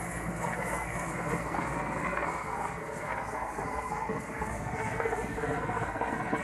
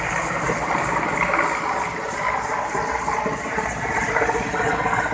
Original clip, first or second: second